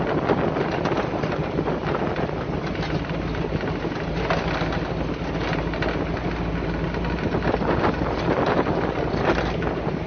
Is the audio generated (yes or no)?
no